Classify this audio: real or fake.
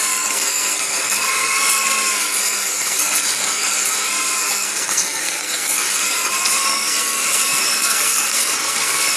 fake